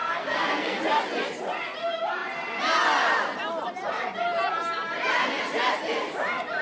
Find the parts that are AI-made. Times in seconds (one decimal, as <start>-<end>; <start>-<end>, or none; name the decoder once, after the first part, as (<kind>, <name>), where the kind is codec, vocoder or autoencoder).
0.0-0.8 (codec, SNAC)